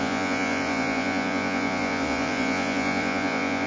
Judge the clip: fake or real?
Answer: fake